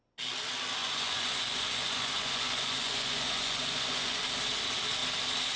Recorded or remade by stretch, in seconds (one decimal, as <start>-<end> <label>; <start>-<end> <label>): 0.0-0.8 recorded; 0.8-4.2 remade; 4.2-5.6 recorded